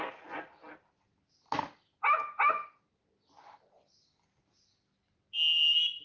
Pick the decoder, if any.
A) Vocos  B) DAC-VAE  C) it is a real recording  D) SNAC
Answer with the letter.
C